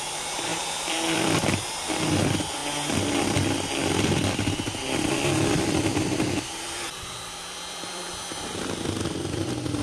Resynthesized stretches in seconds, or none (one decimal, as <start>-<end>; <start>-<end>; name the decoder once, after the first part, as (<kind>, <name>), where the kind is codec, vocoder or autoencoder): 0.0-2.6 (vocoder, BigVGAN v2); 5.1-9.8